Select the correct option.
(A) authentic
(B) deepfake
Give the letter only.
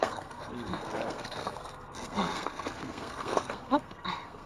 B